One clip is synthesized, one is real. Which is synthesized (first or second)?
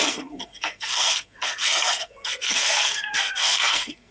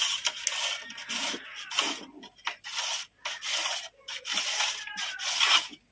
first